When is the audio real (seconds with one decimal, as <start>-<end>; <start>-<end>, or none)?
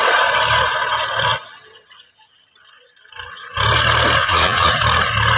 0.0-4.2; 4.7-5.4